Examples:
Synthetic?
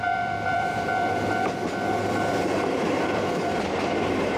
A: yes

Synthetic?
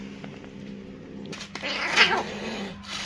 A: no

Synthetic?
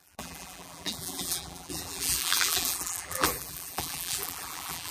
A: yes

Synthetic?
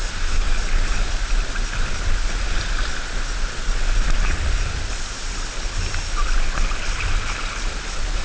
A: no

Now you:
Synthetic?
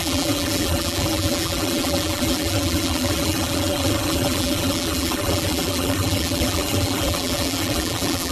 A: yes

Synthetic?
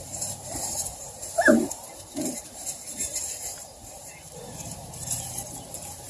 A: yes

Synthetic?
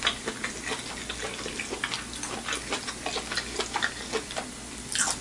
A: no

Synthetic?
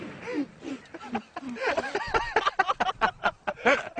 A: no